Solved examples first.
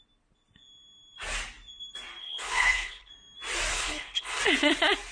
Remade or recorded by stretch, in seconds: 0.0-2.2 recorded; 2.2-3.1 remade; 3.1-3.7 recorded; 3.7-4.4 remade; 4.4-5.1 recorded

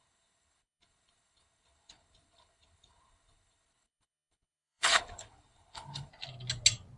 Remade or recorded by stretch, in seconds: 0.0-6.1 remade; 6.1-7.0 recorded

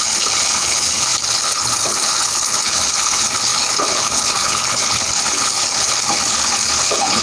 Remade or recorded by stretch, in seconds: 0.0-7.2 remade